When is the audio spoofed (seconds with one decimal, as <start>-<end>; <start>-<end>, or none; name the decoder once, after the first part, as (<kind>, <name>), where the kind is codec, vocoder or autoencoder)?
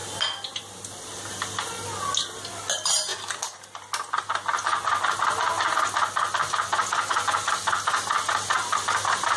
none